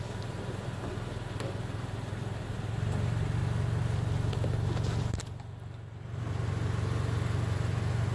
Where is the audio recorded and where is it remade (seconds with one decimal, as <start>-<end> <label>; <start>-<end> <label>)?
0.0-8.1 recorded